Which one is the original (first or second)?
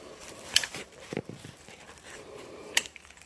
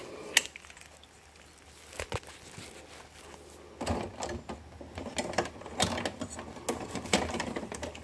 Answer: second